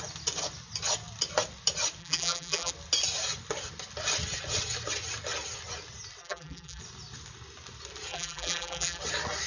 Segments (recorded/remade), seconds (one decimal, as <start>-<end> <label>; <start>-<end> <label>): 0.0-2.0 recorded; 2.0-2.7 remade; 2.7-6.2 recorded; 6.2-6.8 remade; 6.8-8.1 recorded; 8.1-9.0 remade; 9.0-9.5 recorded